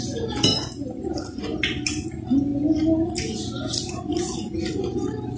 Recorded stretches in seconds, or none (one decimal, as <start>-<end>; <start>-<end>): 0.0-5.4